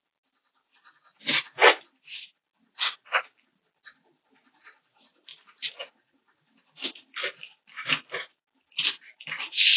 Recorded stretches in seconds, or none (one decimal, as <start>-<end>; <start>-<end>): 0.0-9.8